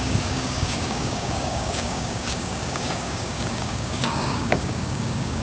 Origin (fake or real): fake